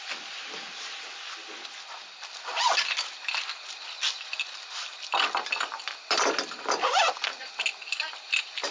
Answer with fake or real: real